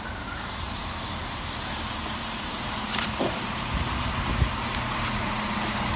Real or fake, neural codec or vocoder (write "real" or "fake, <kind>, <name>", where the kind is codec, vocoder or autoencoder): fake, vocoder, BigVGAN v2